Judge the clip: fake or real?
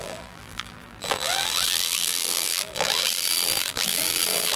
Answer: fake